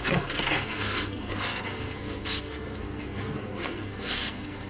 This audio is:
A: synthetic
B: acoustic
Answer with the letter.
A